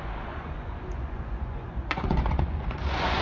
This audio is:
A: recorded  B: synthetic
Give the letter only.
B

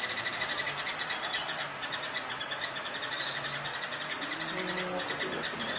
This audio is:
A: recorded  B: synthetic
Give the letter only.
A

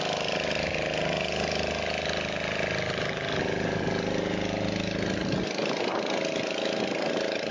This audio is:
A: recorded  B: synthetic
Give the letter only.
A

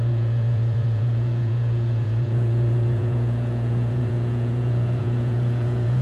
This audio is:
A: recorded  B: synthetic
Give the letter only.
B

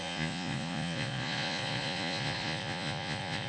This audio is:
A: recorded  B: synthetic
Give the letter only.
B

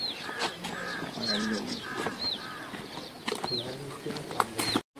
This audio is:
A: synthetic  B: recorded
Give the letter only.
B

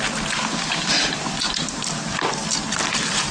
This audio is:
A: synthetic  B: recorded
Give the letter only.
B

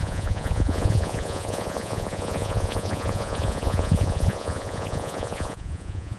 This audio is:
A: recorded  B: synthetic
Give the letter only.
B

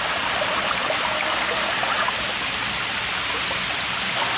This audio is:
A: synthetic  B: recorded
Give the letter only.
B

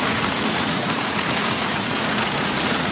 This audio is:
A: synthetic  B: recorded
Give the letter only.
A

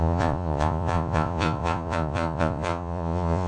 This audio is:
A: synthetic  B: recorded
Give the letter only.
A